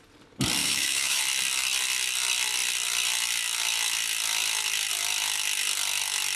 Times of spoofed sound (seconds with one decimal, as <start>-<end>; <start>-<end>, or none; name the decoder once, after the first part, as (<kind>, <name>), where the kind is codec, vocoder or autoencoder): 0.6-1.2 (autoencoder, DAC-VAE)